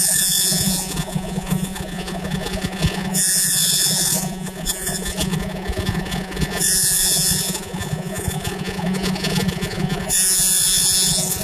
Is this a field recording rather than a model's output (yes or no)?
no